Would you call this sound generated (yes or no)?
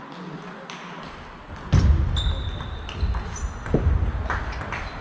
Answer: no